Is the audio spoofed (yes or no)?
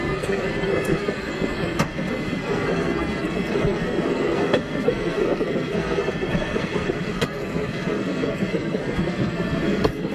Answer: yes